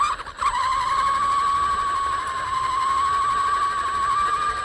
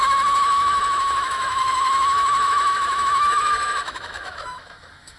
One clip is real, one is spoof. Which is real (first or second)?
first